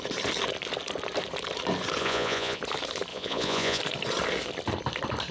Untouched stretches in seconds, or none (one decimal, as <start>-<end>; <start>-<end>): 0.0-2.0; 2.6-3.1; 3.8-5.3